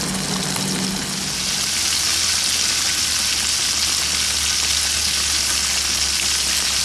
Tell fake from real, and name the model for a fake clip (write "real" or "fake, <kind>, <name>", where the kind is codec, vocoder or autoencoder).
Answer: real